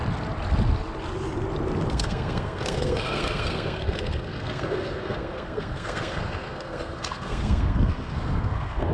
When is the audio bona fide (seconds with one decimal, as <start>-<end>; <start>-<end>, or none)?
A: 0.0-1.9